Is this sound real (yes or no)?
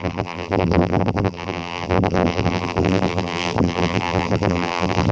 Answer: no